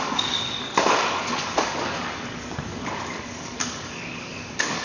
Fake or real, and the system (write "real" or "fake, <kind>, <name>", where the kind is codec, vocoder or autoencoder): fake, codec, DAC